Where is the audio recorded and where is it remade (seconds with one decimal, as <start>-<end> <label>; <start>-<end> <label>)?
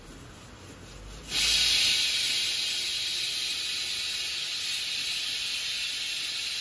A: 0.0-6.6 recorded